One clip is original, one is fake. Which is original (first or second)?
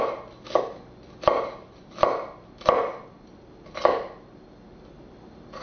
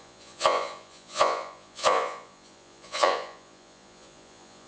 first